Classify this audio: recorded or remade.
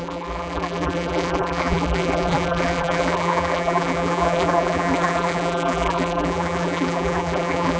remade